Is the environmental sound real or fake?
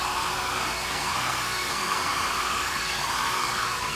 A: fake